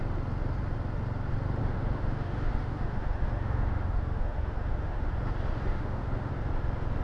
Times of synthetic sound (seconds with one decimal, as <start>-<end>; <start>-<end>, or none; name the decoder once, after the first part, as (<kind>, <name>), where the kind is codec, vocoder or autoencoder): 1.6-5.1 (autoencoder, DAC-VAE); 5.5-6.3